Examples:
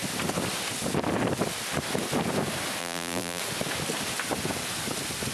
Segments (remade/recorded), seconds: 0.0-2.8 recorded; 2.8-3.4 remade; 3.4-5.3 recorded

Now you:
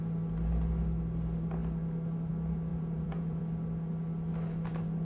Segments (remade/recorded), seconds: 0.0-2.7 recorded; 2.7-3.4 remade; 3.4-5.0 recorded

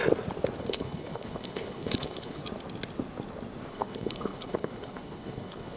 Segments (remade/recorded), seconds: 0.0-0.6 recorded; 0.6-2.4 remade; 2.4-3.7 recorded; 3.7-5.8 remade

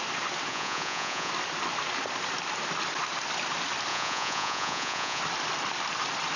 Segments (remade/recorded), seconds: 0.0-0.5 recorded; 0.5-1.3 remade; 1.3-3.9 recorded; 3.9-5.2 remade; 5.2-6.4 recorded